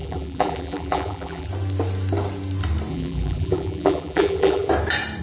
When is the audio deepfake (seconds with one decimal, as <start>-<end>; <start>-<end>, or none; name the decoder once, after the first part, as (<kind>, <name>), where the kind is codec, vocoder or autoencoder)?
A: 0.0-1.5 (vocoder, BigVGAN v2); 2.9-4.7